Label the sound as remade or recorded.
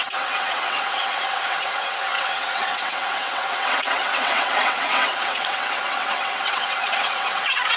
remade